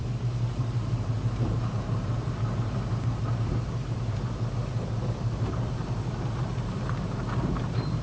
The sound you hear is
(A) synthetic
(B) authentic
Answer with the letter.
A